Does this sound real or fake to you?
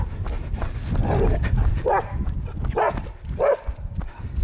real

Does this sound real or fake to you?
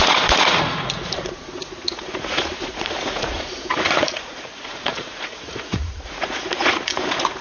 fake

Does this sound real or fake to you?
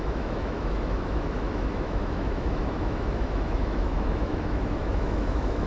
fake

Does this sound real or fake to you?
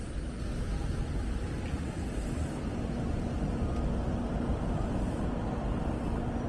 real